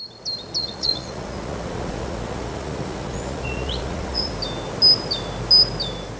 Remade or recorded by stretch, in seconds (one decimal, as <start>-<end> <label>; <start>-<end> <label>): 0.0-0.6 recorded; 0.6-4.3 remade; 4.3-6.2 recorded